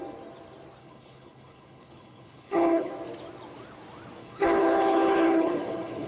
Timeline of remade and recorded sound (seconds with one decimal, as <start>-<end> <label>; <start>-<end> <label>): 0.0-0.8 recorded; 0.8-2.9 remade; 2.9-4.2 recorded; 4.2-6.1 remade